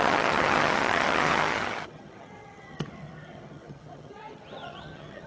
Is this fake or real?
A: fake